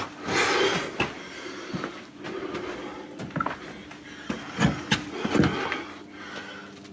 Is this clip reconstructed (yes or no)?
no